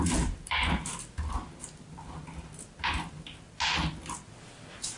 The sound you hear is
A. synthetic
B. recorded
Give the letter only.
B